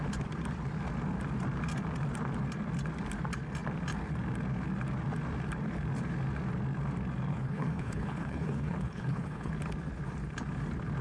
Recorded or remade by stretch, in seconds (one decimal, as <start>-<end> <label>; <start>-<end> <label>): 0.0-7.3 recorded; 7.3-9.5 remade; 9.5-11.0 recorded